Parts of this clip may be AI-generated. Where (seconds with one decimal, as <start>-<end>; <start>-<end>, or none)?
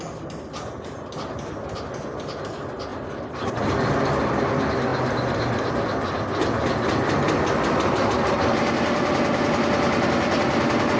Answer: none